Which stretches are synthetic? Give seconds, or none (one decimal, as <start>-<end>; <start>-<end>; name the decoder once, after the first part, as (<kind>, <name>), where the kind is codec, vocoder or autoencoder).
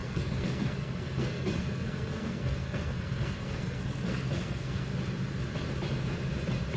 0.0-4.9 (codec, SNAC)